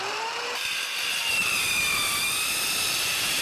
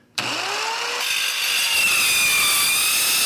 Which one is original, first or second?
second